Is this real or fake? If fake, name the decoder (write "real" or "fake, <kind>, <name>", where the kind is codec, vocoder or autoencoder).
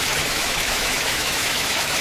fake, autoencoder, DAC-VAE